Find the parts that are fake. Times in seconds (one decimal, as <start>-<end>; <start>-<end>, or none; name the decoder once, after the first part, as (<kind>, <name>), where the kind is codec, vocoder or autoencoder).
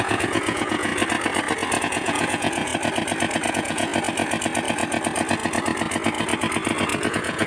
0.0-0.9 (vocoder, Vocos); 1.8-2.7; 3.5-3.9; 7.1-7.5